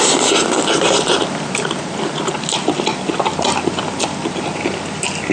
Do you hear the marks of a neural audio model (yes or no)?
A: no